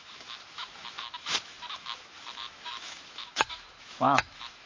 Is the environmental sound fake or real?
fake